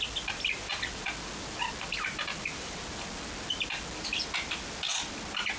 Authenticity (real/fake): real